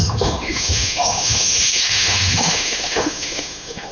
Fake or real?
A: fake